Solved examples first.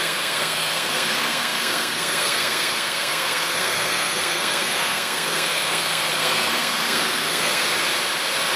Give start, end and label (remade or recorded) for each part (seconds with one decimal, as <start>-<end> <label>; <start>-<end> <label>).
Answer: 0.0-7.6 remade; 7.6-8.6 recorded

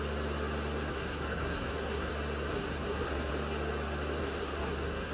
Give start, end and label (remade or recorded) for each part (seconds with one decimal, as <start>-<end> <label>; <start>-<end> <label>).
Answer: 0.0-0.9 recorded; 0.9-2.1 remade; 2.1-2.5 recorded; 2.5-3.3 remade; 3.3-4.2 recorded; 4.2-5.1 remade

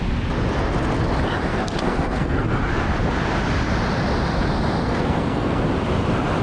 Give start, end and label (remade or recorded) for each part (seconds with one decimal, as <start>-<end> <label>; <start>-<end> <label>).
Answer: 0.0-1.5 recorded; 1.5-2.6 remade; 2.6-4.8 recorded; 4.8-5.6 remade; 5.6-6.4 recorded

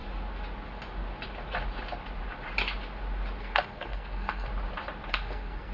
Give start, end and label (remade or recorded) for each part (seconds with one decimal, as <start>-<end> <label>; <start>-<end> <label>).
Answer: 0.0-3.4 recorded; 3.4-4.5 remade; 4.5-5.1 recorded; 5.1-5.7 remade

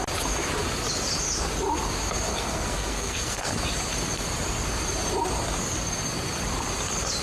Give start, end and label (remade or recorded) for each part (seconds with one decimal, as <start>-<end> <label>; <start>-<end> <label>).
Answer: 0.0-2.3 recorded; 2.3-3.6 remade; 3.6-7.2 recorded